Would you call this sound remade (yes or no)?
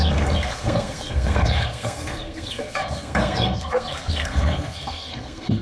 yes